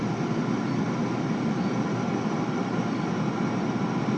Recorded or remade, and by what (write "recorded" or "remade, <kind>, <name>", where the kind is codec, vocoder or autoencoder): recorded